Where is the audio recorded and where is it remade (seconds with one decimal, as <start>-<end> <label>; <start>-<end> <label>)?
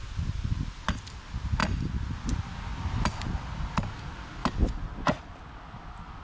0.0-6.2 recorded